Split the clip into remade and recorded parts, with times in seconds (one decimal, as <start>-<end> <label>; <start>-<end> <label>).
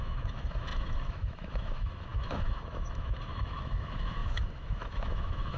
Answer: 0.0-5.6 remade